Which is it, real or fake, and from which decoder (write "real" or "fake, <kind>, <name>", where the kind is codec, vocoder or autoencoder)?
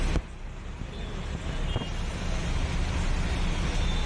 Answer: real